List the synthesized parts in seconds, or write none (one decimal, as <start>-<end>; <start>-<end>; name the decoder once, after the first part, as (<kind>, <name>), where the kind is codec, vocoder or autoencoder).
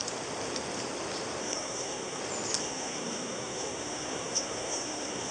1.4-2.2 (codec, SNAC); 2.6-5.3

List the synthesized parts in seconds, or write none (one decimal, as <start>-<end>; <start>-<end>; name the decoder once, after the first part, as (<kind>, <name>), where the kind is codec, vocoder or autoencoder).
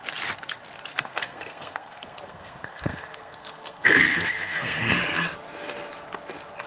0.9-4.9 (codec, SNAC)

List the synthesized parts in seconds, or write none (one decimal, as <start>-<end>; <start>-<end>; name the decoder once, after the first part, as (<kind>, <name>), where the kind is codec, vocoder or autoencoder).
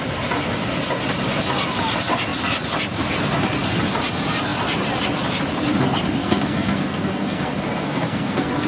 6.2-8.7 (codec, SNAC)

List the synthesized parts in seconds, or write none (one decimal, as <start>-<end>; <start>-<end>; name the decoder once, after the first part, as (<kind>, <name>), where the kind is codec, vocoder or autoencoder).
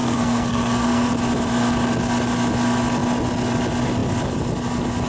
0.0-1.1 (codec, SNAC)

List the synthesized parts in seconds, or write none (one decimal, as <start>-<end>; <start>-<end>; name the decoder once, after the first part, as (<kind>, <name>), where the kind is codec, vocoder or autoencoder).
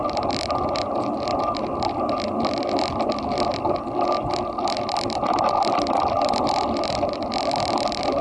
none